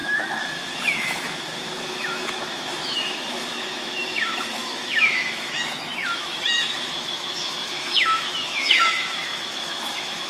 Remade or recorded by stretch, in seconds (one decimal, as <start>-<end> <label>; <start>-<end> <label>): 0.0-10.3 remade